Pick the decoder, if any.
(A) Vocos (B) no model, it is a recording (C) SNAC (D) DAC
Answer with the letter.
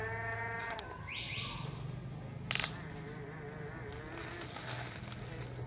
B